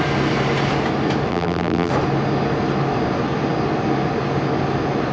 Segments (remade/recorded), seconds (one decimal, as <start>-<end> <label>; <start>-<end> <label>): 0.0-1.3 recorded; 1.3-1.9 remade; 1.9-5.1 recorded